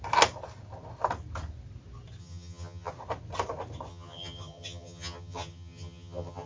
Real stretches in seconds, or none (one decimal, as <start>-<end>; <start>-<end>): 0.0-2.2; 2.9-3.9

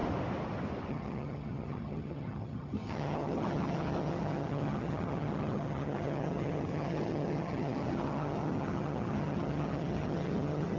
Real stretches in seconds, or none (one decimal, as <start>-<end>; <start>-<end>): 0.0-0.9